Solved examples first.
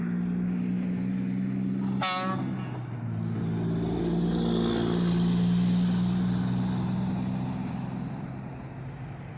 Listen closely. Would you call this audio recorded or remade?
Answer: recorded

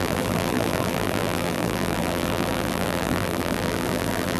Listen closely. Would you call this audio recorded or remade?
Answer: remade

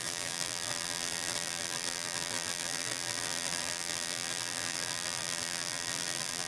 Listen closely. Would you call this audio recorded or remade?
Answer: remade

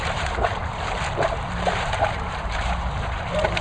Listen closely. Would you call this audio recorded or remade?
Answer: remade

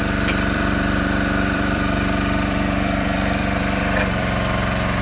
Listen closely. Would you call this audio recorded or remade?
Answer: remade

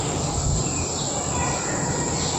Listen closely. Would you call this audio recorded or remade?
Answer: recorded